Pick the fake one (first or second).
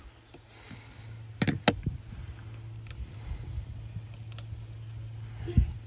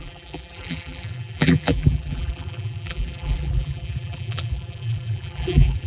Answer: second